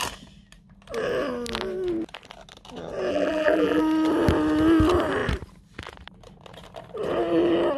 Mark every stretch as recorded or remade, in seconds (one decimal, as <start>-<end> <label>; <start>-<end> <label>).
0.0-3.1 recorded; 3.1-3.8 remade; 3.8-7.8 recorded